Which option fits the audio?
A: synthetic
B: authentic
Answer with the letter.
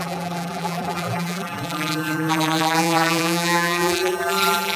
A